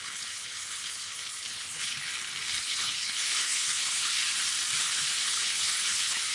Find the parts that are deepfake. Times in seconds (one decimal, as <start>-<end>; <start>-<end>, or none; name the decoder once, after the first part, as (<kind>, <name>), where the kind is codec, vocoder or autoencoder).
0.0-2.1 (codec, HILCodec); 2.6-4.1; 4.8-6.3